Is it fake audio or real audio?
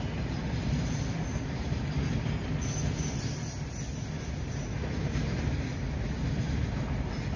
real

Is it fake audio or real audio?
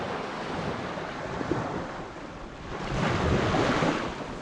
real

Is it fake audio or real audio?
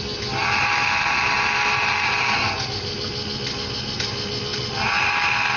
real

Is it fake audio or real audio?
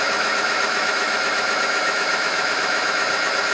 fake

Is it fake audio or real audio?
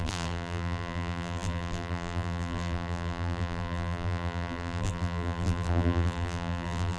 fake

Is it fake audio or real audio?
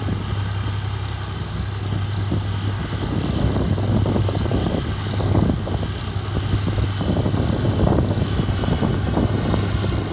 real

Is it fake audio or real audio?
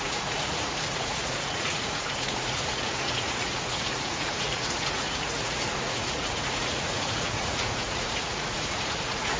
fake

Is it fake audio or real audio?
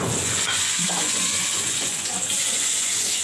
fake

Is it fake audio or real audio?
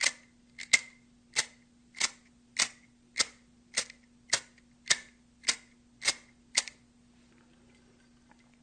real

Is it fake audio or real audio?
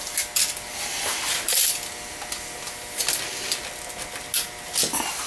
real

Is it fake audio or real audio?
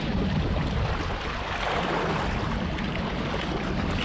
real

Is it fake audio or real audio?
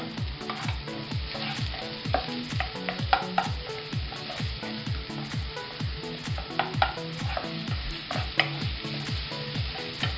real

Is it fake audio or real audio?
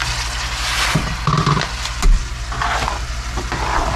real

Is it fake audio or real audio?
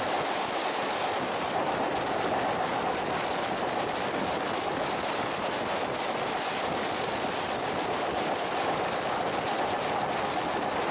real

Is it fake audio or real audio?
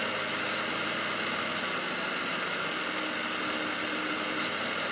real